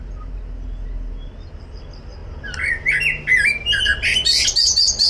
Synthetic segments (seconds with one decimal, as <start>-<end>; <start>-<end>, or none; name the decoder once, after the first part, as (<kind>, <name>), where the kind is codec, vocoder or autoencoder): none